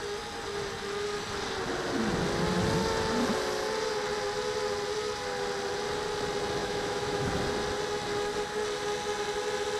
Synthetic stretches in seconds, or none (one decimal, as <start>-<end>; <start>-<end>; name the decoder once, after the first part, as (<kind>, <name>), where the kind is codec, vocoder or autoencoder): 6.6-7.3 (autoencoder, DAC-VAE)